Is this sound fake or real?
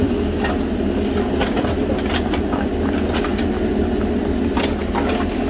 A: real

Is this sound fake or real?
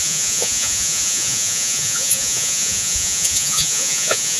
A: fake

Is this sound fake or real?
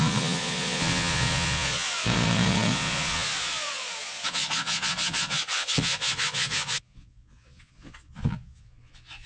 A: fake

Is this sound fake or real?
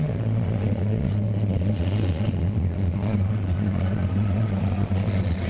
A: fake